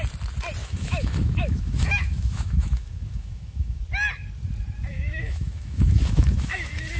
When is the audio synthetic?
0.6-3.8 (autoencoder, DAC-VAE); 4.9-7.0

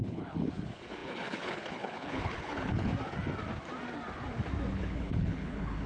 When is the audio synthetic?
0.0-2.9 (codec, HILCodec); 4.7-5.9